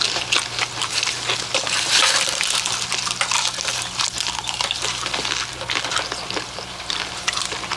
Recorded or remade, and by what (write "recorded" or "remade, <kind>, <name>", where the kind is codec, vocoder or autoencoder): recorded